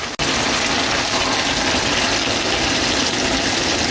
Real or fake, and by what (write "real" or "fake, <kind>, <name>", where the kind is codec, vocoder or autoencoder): real